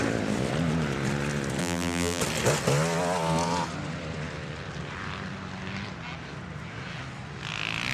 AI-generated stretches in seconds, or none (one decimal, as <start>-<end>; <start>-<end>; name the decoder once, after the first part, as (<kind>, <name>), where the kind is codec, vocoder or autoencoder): 1.6-2.2 (vocoder, BigVGAN v2)